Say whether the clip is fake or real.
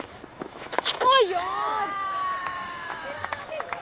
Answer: fake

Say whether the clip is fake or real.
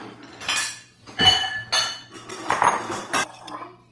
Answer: real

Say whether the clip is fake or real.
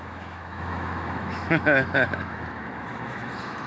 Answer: fake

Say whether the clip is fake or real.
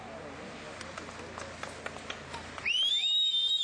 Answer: real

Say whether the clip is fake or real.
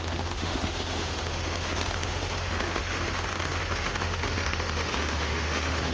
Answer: fake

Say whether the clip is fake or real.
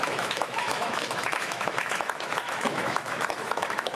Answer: fake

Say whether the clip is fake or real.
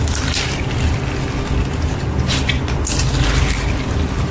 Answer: real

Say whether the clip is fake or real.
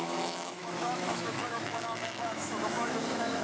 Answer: fake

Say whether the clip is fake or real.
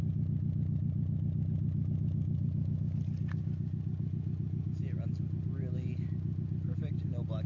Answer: real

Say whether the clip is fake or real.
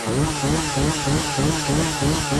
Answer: fake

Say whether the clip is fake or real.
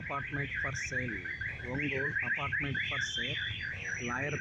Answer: real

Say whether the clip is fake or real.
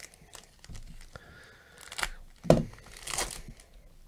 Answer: real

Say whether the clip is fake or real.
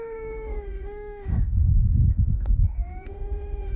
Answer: fake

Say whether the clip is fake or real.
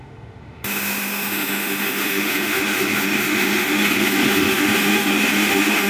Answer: fake